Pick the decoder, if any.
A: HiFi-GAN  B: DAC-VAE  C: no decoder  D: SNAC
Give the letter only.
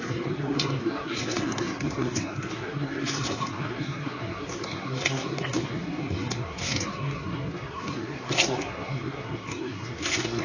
D